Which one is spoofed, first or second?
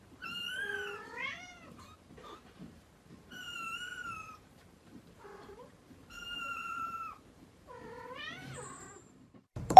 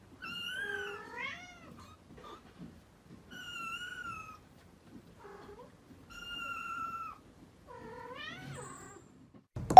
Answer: first